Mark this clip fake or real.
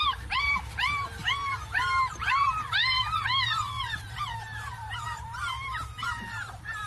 fake